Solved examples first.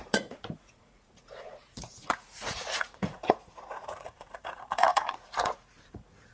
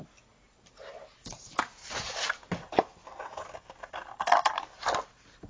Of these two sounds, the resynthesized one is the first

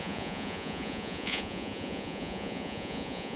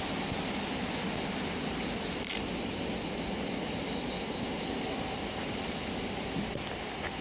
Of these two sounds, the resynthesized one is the first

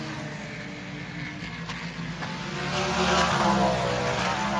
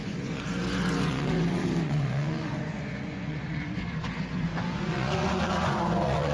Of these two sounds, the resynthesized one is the second